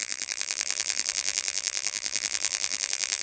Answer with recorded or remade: remade